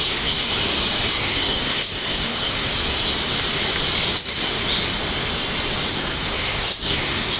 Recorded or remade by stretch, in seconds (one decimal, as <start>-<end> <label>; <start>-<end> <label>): 0.0-0.5 remade; 0.5-1.1 recorded; 1.1-2.7 remade; 2.7-5.9 recorded; 5.9-7.4 remade